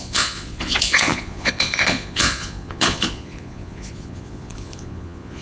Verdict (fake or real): fake